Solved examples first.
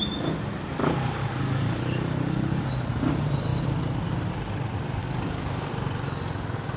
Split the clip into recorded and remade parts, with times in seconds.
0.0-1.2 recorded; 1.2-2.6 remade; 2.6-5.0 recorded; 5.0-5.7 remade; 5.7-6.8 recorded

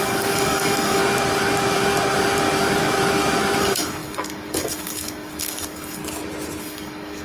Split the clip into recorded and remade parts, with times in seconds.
0.0-1.0 remade; 1.0-3.6 recorded; 3.6-6.0 remade; 6.0-6.6 recorded; 6.6-7.2 remade

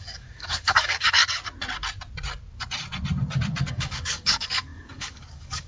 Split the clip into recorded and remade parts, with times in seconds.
0.0-1.2 remade; 1.2-3.6 recorded; 3.6-5.7 remade